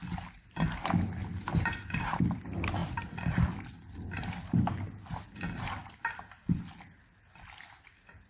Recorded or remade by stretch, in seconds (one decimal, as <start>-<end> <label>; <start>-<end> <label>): 0.0-1.2 recorded; 1.2-2.2 remade; 2.2-8.3 recorded